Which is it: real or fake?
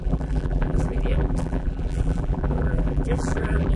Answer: fake